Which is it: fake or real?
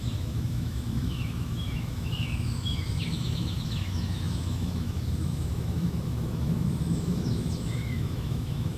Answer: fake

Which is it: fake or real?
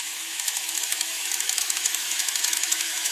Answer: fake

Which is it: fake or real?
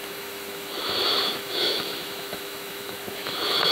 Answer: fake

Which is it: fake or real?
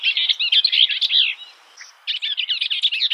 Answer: real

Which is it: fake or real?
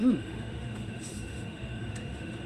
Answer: fake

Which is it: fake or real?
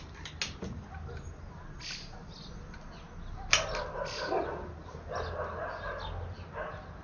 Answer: real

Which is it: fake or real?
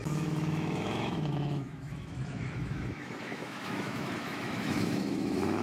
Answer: fake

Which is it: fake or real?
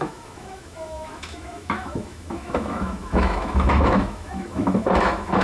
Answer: fake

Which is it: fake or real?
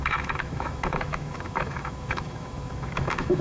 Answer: fake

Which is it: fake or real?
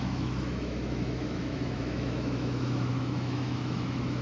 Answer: fake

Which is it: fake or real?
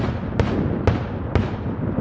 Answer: real